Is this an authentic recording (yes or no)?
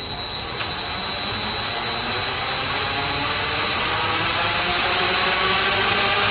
yes